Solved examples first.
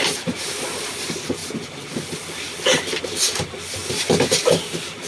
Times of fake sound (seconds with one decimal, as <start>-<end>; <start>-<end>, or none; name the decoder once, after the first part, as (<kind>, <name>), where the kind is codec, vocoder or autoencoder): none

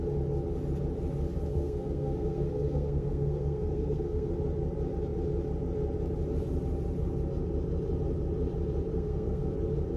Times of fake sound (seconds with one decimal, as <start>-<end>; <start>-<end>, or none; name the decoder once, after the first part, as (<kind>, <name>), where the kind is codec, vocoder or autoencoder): 1.5-4.3 (codec, SNAC); 8.9-9.5

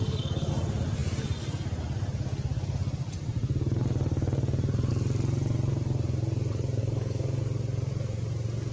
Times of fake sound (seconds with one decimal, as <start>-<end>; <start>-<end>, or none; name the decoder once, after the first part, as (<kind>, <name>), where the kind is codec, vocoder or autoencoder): 0.0-0.5 (codec, DAC); 6.8-7.4

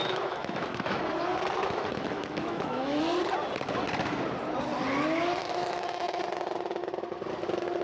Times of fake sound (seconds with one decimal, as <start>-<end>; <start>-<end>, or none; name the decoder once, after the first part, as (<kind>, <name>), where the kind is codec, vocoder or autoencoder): 0.0-1.0 (autoencoder, DAC-VAE); 1.6-3.0; 5.4-6.2